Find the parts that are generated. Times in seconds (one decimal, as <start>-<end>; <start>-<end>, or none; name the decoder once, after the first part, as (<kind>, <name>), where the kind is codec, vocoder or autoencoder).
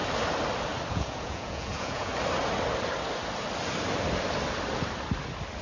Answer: 0.9-2.1 (vocoder, Vocos)